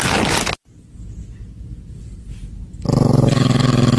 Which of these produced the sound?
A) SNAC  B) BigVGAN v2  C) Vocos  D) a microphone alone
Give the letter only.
D